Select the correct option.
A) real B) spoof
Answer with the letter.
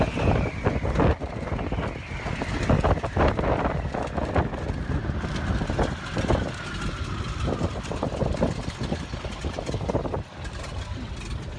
A